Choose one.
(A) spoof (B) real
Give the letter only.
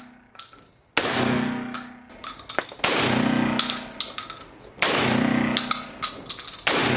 B